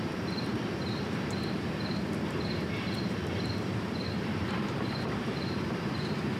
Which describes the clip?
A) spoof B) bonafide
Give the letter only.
A